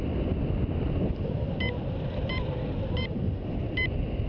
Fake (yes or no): no